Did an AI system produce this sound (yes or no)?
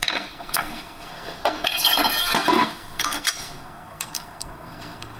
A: yes